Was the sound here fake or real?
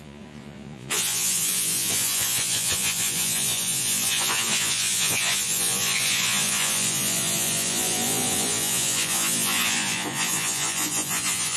fake